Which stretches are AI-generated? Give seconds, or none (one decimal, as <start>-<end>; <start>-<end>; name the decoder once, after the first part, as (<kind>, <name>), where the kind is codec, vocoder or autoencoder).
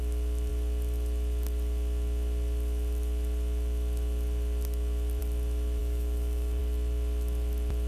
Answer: 5.8-6.6 (autoencoder, DAC-VAE)